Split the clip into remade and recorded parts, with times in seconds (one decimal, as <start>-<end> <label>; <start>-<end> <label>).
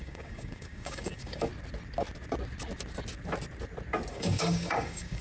0.0-1.5 remade; 1.5-4.1 recorded; 4.1-5.2 remade